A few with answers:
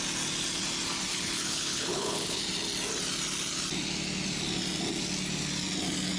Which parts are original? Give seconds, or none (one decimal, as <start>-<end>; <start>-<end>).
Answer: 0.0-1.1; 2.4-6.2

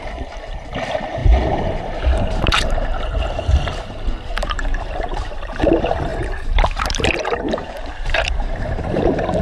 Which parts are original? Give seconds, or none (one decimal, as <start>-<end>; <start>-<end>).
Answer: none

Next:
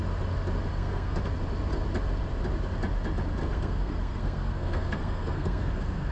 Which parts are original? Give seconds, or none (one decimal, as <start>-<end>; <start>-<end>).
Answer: 0.0-0.7; 1.2-3.4

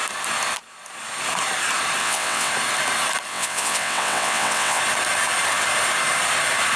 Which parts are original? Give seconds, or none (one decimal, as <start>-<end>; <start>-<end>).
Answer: 0.0-2.0; 2.5-3.3; 4.8-6.8

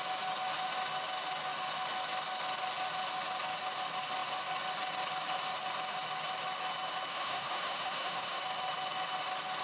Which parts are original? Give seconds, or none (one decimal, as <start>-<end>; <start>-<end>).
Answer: 0.0-7.1; 8.4-9.6

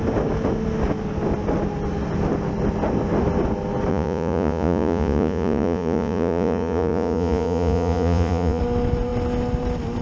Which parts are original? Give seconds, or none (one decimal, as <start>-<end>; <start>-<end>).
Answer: 0.0-3.9; 8.6-10.0

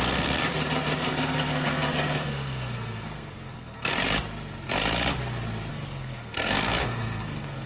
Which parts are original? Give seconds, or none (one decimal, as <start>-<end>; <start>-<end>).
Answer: 0.4-1.0; 3.9-5.7

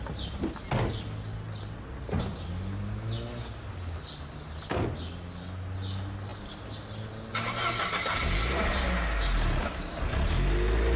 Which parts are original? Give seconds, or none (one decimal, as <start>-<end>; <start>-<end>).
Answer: 0.0-11.0